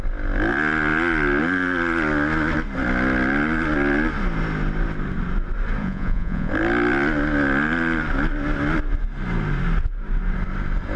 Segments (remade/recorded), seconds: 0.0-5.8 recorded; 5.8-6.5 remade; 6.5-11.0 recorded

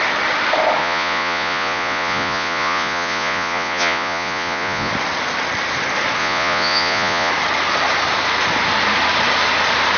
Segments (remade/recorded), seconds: 0.0-0.8 recorded; 0.8-4.9 remade; 4.9-6.2 recorded; 6.2-7.3 remade; 7.3-10.0 recorded

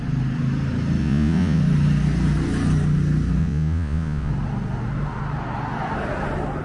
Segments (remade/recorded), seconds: 0.0-1.0 recorded; 1.0-1.6 remade; 1.6-3.4 recorded; 3.4-4.3 remade; 4.3-6.6 recorded

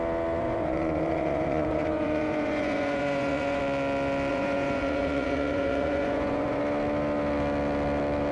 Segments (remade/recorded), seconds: 0.0-0.4 recorded; 0.4-3.6 remade; 3.6-4.3 recorded; 4.3-6.6 remade; 6.6-8.3 recorded

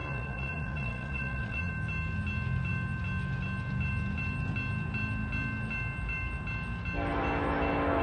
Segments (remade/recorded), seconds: 0.0-1.7 remade; 1.7-8.0 recorded

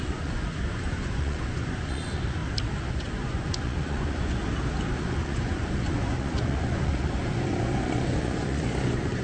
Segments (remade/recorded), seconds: 0.0-2.4 remade; 2.4-2.9 recorded; 2.9-4.4 remade; 4.4-4.9 recorded; 4.9-9.2 remade

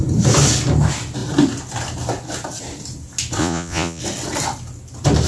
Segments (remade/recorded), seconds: 0.0-3.4 recorded; 3.4-4.0 remade; 4.0-5.3 recorded

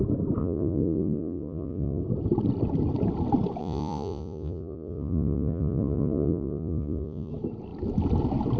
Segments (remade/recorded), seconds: 0.0-0.4 recorded; 0.4-2.0 remade; 2.0-3.6 recorded; 3.6-7.3 remade; 7.3-8.6 recorded